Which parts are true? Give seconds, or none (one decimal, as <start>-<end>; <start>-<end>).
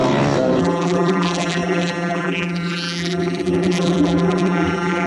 0.0-0.6